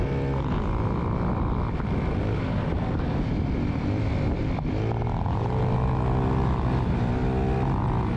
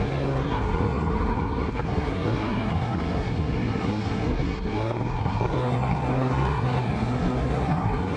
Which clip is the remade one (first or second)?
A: second